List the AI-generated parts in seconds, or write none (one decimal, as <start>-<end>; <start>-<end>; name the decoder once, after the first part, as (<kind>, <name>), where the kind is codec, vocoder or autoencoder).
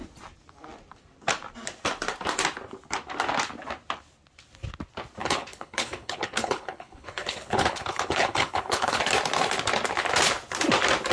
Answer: 5.2-9.0 (codec, HILCodec)